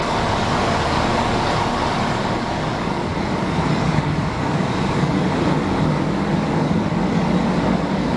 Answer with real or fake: fake